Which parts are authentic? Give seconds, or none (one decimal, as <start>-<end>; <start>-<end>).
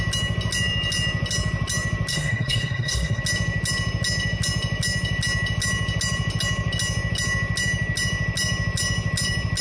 0.0-2.1; 3.2-9.6